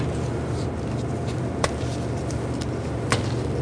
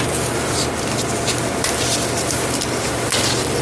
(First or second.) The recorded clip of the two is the second